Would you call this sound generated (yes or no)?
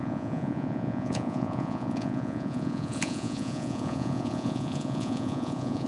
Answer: yes